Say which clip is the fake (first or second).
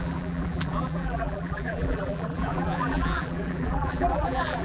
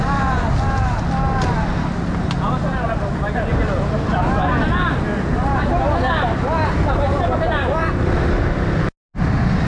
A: first